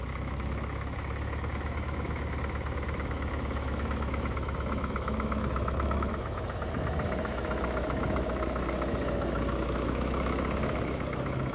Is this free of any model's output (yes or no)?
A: no